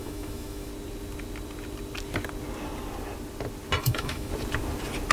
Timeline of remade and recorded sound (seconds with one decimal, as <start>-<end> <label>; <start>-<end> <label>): 0.0-0.7 remade; 0.7-3.8 recorded; 3.8-4.3 remade; 4.3-5.1 recorded